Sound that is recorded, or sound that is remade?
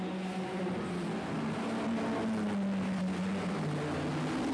recorded